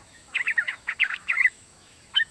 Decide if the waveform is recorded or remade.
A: remade